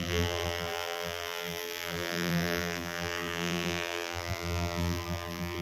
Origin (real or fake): fake